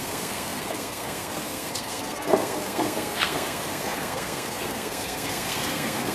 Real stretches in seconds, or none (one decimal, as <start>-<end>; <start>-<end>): none